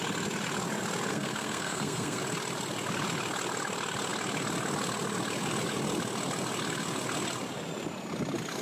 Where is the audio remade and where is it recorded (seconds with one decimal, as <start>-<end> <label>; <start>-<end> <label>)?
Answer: 0.0-1.1 recorded; 1.1-2.2 remade; 2.2-8.6 recorded